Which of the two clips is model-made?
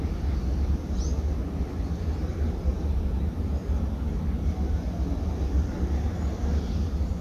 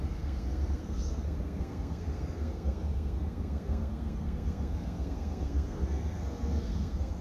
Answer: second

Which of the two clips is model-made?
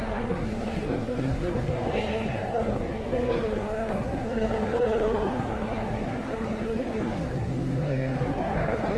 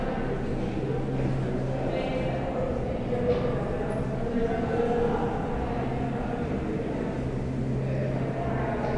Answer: first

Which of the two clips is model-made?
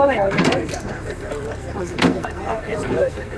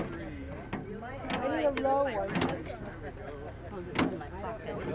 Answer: first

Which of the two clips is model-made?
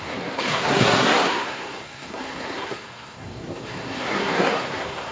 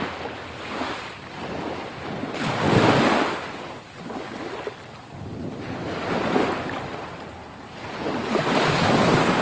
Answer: first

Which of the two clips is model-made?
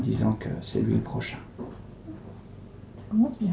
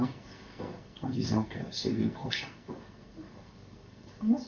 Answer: second